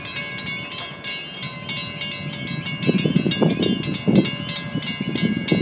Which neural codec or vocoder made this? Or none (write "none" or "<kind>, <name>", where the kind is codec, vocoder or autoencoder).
none